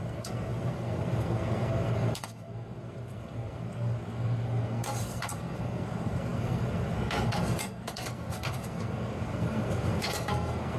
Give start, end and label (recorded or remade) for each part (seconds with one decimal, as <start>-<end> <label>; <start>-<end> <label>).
0.0-10.8 remade